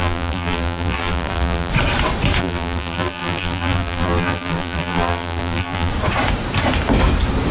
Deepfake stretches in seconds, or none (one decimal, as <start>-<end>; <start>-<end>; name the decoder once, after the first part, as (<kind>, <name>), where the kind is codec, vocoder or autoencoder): 0.0-1.7 (vocoder, BigVGAN v2); 2.4-5.9